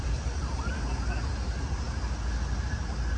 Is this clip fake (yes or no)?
no